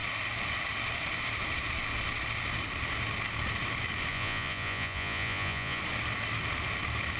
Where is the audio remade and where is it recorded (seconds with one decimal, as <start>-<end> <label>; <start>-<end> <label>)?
0.0-4.1 recorded; 4.1-5.8 remade; 5.8-7.2 recorded